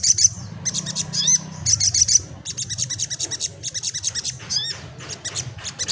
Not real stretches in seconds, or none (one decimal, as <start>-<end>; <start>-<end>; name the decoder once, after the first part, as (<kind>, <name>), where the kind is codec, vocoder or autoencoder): none